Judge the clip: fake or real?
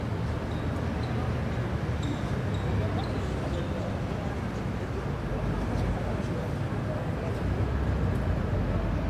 real